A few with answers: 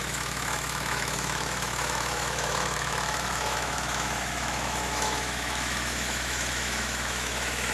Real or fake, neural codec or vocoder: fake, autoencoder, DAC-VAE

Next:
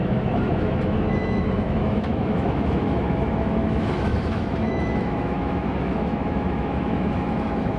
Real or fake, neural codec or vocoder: fake, autoencoder, DAC-VAE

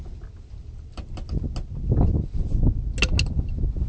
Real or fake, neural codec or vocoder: real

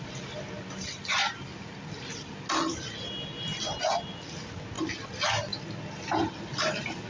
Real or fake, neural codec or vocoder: real